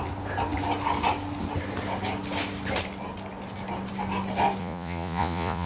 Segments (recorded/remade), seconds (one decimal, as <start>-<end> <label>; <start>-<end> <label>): 0.0-4.6 recorded; 4.6-5.7 remade